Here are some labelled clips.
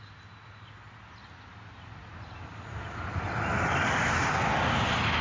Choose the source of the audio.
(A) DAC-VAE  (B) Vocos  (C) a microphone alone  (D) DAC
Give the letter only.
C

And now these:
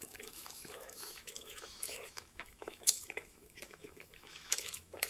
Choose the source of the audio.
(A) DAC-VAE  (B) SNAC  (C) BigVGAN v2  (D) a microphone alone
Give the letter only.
A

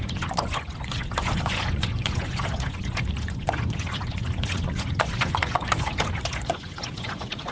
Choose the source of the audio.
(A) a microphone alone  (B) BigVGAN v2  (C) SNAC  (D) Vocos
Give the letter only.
D